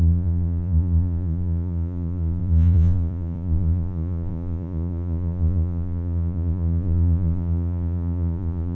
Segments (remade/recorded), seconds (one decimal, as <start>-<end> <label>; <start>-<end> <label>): 0.0-8.7 remade